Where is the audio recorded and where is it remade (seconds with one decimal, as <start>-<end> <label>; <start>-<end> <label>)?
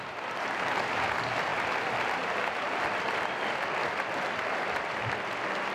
0.0-5.7 recorded